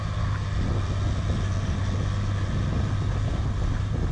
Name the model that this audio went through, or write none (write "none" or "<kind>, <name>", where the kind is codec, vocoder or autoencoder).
none